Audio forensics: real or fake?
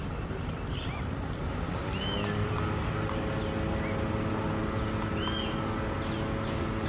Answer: real